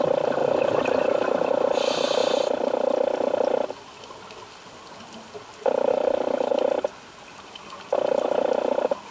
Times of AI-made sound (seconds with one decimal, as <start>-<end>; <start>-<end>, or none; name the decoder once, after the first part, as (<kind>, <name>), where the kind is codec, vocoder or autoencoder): 5.9-6.5 (codec, DAC)